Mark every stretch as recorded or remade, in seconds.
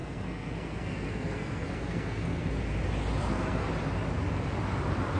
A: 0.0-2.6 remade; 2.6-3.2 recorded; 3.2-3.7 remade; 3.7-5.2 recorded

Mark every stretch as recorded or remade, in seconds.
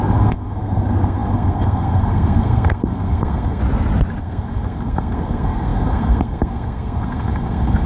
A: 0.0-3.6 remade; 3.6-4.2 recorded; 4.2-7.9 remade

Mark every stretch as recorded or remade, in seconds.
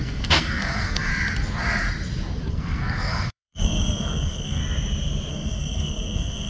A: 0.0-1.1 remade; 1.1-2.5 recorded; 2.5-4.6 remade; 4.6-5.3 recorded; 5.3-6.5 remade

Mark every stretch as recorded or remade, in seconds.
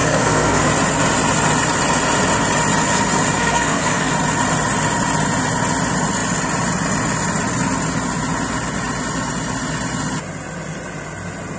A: 0.0-0.7 remade; 0.7-3.4 recorded; 3.4-4.1 remade; 4.1-11.6 recorded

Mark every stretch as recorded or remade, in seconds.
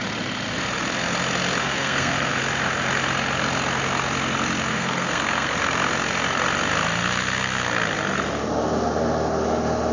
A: 0.0-1.6 recorded; 1.6-2.4 remade; 2.4-4.7 recorded; 4.7-5.5 remade; 5.5-9.9 recorded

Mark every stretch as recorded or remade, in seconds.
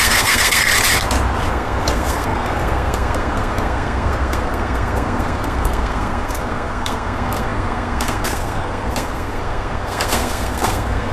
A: 0.0-0.7 remade; 0.7-1.5 recorded; 1.5-11.1 remade